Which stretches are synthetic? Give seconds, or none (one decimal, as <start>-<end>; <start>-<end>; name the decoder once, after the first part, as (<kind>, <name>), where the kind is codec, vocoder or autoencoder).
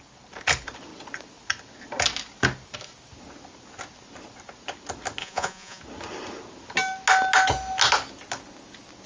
5.2-5.8 (vocoder, Vocos)